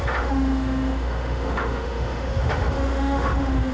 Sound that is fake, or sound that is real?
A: fake